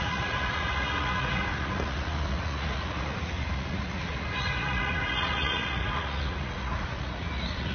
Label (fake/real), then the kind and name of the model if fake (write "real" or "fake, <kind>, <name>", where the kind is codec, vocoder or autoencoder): fake, vocoder, Vocos